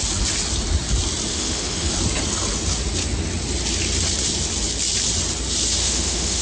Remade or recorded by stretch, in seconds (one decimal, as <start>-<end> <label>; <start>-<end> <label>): 0.0-1.3 recorded; 1.3-1.9 remade; 1.9-5.8 recorded; 5.8-6.4 remade

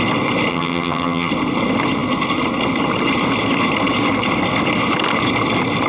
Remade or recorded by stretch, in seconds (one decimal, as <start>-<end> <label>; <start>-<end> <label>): 0.0-0.5 recorded; 0.5-1.3 remade; 1.3-5.9 recorded

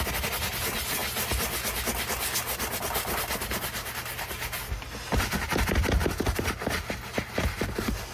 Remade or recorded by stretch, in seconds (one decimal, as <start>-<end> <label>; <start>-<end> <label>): 0.0-8.1 recorded

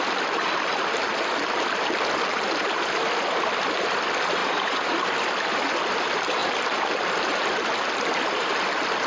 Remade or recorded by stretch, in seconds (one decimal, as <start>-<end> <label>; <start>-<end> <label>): 0.0-4.4 recorded; 4.4-5.0 remade; 5.0-9.1 recorded

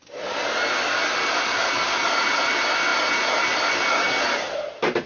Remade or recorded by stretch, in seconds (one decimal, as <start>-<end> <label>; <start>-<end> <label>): 0.0-5.1 recorded

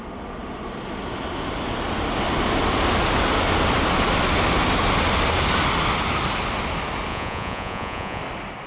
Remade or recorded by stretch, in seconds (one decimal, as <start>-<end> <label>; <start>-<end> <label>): 0.0-7.1 recorded; 7.1-8.2 remade; 8.2-8.7 recorded

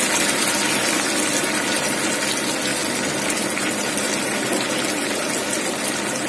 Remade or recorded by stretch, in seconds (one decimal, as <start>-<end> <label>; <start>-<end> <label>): 0.0-6.3 recorded